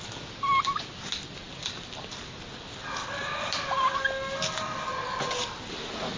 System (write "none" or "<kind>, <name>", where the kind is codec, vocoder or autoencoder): none